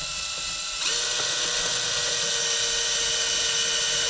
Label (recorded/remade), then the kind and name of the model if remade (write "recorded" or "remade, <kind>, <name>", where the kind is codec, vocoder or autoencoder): recorded